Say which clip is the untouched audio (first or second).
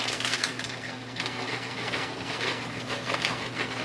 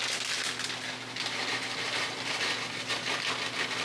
second